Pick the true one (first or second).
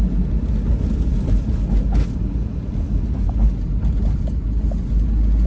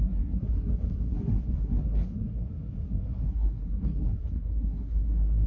first